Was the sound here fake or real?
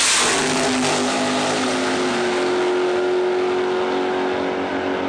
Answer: real